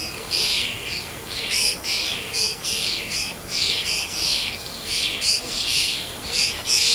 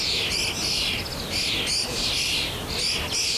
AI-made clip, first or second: first